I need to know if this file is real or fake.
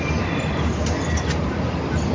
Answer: real